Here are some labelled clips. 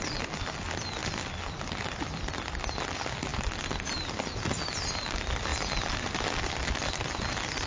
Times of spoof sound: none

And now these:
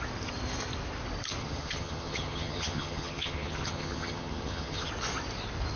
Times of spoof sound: 1.4-4.9 (vocoder, HiFi-GAN)

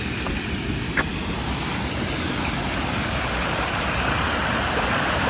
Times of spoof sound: none

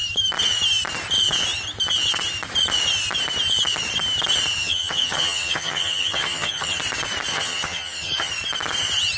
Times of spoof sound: 4.6-6.8 (vocoder, HiFi-GAN); 7.3-8.3

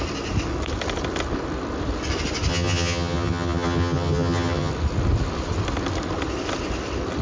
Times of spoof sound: 2.5-4.7 (vocoder, HiFi-GAN)

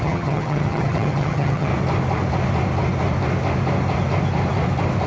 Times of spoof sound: 0.0-1.7 (vocoder, HiFi-GAN)